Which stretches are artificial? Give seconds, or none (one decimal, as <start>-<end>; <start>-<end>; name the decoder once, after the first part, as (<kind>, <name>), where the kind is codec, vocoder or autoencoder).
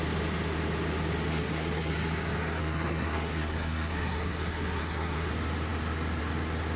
1.3-1.9 (codec, SNAC); 2.6-5.3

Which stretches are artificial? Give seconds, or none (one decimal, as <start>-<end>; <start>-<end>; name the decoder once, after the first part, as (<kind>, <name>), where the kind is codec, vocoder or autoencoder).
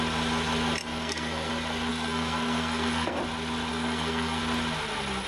0.9-1.5 (codec, SNAC); 1.9-3.2; 3.7-4.4